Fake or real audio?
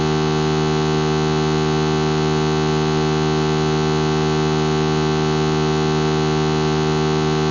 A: real